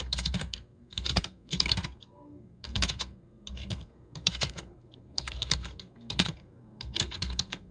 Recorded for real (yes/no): no